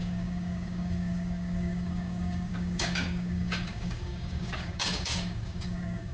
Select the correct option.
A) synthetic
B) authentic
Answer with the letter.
A